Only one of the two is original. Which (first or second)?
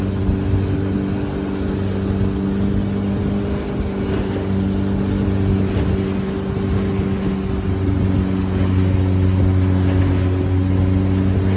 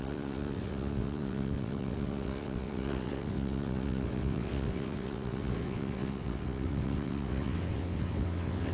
first